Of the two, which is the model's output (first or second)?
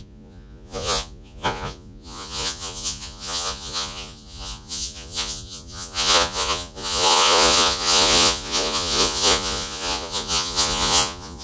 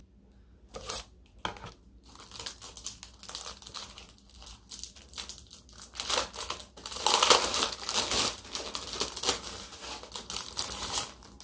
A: first